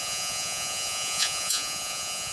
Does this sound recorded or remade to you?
remade